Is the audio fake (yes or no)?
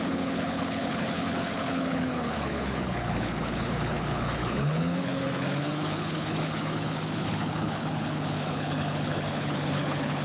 yes